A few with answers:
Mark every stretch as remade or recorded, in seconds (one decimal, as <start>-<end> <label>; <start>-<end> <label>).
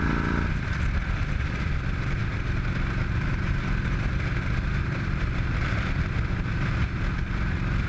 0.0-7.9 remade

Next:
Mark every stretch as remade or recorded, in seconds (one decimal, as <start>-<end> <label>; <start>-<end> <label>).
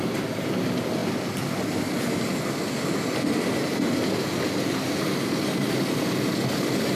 0.0-1.0 remade; 1.0-5.0 recorded; 5.0-7.0 remade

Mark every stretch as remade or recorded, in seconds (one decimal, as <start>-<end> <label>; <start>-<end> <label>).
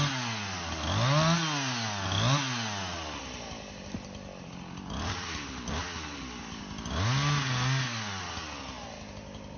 0.0-3.2 recorded; 3.2-6.6 remade; 6.6-9.6 recorded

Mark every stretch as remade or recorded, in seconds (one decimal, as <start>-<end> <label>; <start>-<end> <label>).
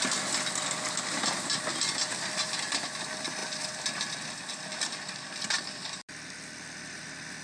0.0-7.4 recorded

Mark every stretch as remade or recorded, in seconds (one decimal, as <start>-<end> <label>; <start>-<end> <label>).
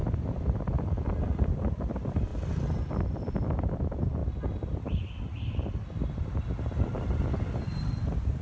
0.0-1.2 recorded; 1.2-2.3 remade; 2.3-2.9 recorded; 2.9-4.2 remade; 4.2-7.6 recorded; 7.6-8.4 remade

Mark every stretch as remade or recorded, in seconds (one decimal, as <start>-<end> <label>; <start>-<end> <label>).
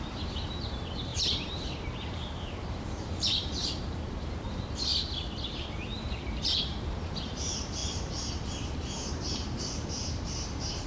0.0-4.9 remade; 4.9-5.5 recorded; 5.5-10.9 remade